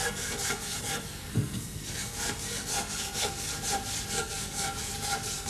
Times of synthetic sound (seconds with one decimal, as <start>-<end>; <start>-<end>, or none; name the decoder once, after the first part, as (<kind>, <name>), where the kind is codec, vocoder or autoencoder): 0.0-3.5 (codec, SNAC); 4.1-5.5